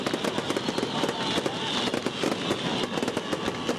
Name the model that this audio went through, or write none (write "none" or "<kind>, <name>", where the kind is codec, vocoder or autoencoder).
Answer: none